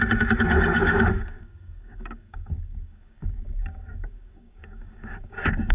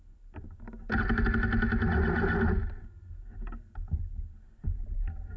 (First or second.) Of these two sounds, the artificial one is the first